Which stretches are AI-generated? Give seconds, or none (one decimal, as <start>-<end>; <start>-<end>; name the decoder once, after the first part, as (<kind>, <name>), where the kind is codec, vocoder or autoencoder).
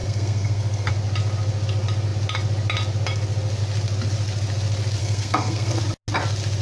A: 0.0-0.9 (codec, SNAC); 5.0-5.8